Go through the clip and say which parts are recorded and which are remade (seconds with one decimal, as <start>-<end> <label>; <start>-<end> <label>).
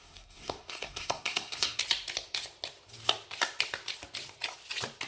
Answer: 0.0-1.8 remade; 1.8-5.1 recorded